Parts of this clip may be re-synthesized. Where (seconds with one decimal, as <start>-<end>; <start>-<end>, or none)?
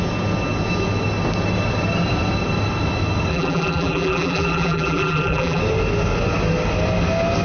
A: 3.3-5.6